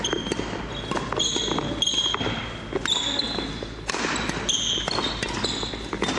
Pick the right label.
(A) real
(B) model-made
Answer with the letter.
A